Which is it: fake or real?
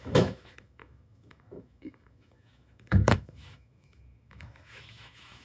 fake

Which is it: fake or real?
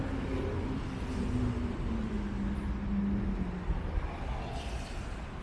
real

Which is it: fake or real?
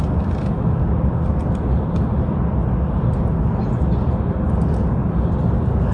real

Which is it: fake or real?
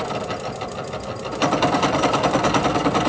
real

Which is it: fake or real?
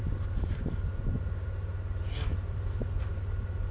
real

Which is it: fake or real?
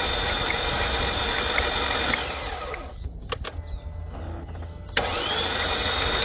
real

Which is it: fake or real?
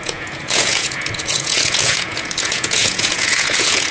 fake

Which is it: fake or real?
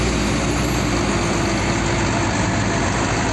real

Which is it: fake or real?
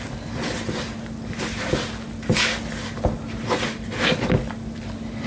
real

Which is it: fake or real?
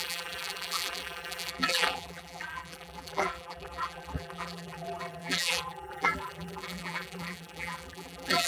fake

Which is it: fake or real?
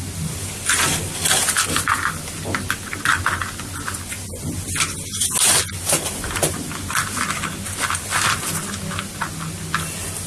real